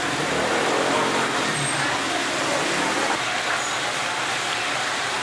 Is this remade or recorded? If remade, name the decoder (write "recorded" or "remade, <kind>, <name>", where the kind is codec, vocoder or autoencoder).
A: recorded